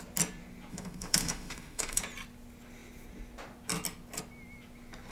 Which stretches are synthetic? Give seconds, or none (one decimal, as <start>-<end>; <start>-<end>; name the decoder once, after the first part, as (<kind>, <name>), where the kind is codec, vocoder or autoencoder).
0.7-2.0 (autoencoder, DAC-VAE)